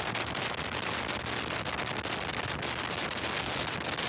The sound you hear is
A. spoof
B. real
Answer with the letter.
B